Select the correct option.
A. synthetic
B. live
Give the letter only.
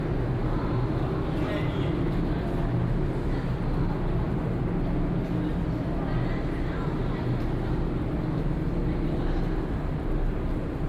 B